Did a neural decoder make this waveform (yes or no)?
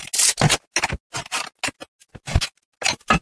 no